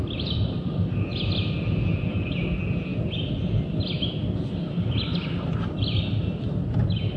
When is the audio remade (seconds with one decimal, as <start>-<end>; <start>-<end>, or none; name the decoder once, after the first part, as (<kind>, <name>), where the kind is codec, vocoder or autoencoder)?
none